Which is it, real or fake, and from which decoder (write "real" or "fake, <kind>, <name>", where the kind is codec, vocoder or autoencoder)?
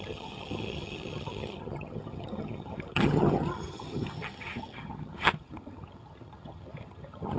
fake, vocoder, HiFi-GAN